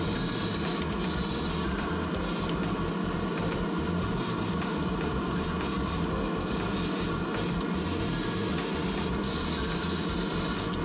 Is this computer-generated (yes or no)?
no